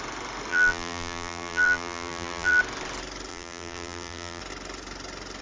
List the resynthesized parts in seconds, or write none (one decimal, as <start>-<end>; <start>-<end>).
0.5-2.6; 3.3-4.4